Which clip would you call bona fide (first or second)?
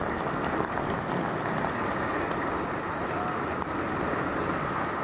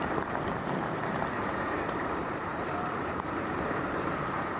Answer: first